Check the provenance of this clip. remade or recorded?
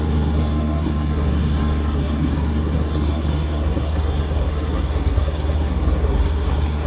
remade